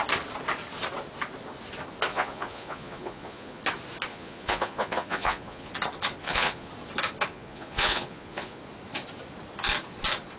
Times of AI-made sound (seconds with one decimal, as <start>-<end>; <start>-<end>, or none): 2.1-3.6; 4.1-5.7; 6.2-6.7; 7.3-8.6